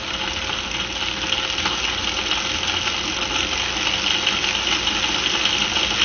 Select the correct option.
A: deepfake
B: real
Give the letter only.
B